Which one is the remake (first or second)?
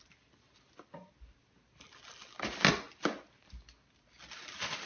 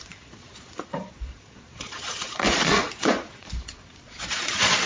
second